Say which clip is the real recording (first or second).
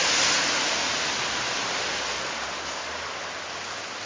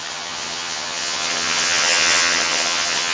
first